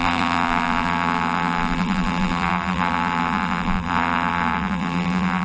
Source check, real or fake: fake